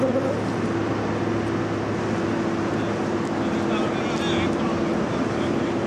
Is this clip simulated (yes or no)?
no